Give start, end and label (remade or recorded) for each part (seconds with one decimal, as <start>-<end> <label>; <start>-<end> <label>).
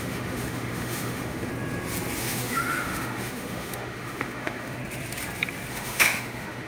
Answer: 0.0-1.5 remade; 1.5-2.2 recorded; 2.2-4.8 remade; 4.8-5.7 recorded; 5.7-6.7 remade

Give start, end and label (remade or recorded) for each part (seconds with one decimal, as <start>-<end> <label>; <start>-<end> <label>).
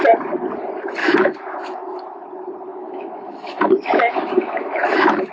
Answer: 0.0-1.0 recorded; 1.0-2.2 remade; 2.2-2.7 recorded; 2.7-5.3 remade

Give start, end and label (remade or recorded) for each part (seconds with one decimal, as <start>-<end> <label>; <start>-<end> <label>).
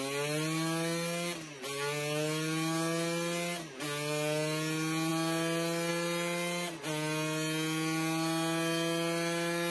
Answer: 0.0-9.7 recorded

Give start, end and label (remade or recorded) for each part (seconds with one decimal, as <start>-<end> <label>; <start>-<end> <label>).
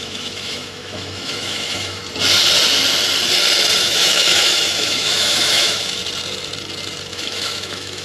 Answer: 0.0-2.0 remade; 2.0-3.8 recorded; 3.8-6.0 remade; 6.0-7.1 recorded; 7.1-8.0 remade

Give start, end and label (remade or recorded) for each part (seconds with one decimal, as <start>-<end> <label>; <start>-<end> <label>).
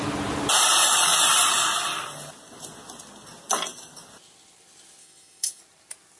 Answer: 0.0-5.0 recorded; 5.0-5.6 remade; 5.6-6.2 recorded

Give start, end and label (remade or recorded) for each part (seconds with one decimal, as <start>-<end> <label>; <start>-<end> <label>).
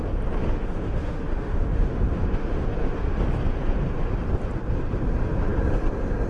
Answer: 0.0-0.4 recorded; 0.4-3.2 remade; 3.2-6.3 recorded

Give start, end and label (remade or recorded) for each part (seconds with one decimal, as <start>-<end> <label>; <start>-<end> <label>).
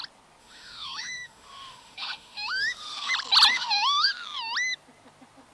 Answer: 0.0-0.4 recorded; 0.4-3.1 remade; 3.1-3.5 recorded; 3.5-4.1 remade; 4.1-5.5 recorded